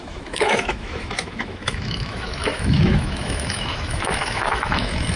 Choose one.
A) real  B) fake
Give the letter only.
B